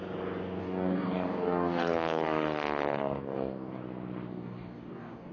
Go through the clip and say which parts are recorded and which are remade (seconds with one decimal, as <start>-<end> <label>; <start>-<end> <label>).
0.0-0.6 recorded; 0.6-3.8 remade; 3.8-4.3 recorded; 4.3-5.3 remade